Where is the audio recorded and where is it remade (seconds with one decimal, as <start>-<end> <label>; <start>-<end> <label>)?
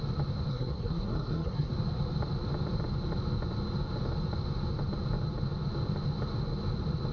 0.0-0.5 recorded; 0.5-1.7 remade; 1.7-7.1 recorded